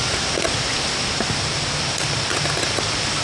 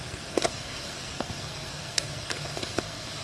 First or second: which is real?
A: first